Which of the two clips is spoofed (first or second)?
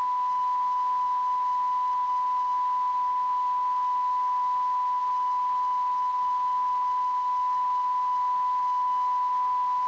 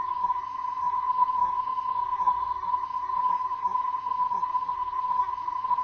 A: second